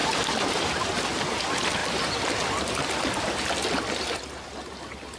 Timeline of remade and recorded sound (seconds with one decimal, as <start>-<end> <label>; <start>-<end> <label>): 0.0-5.2 recorded